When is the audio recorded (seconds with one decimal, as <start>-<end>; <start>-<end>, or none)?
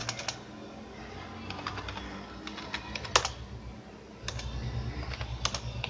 0.0-5.9